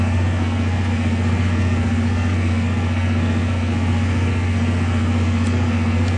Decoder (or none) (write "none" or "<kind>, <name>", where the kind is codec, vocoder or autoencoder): codec, SNAC